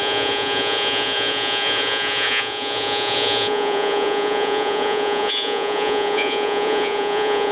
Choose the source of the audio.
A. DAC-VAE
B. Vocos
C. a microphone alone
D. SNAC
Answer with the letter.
B